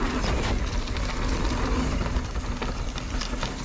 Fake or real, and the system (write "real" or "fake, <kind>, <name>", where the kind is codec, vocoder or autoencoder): real